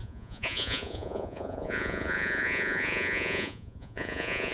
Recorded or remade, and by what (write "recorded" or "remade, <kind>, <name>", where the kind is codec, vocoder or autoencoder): remade, vocoder, Vocos